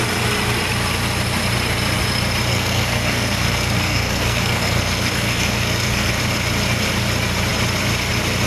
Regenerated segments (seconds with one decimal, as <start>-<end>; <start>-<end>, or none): 2.5-6.1